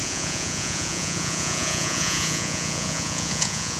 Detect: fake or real fake